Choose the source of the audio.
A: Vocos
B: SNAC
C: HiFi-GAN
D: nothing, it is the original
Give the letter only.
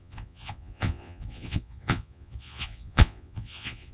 A